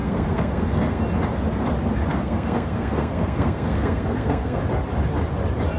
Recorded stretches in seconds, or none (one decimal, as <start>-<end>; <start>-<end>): 1.0-2.1; 4.6-5.8